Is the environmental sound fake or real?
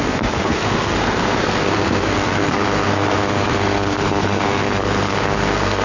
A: fake